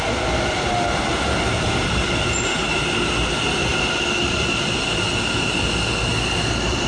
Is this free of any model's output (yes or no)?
yes